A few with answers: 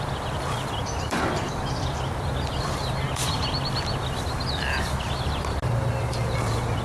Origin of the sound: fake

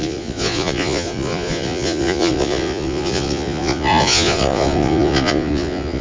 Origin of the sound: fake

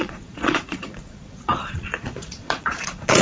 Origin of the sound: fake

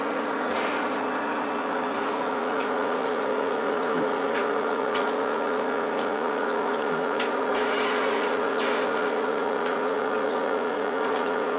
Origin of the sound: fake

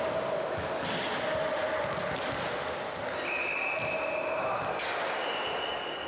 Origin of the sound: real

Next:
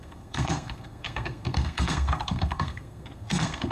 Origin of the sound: fake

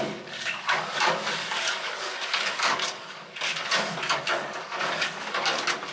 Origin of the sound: fake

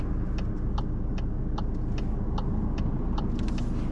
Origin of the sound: real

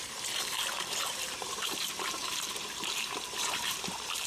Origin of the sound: fake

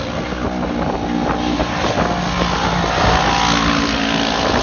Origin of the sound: real